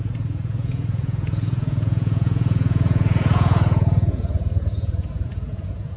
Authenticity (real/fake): fake